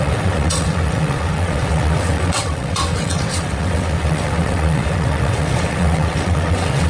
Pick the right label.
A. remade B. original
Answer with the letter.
A